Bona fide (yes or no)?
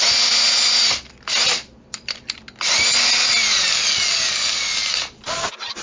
yes